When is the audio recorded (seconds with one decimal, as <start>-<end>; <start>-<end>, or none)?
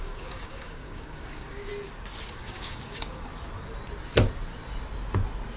1.7-2.3; 3.3-5.6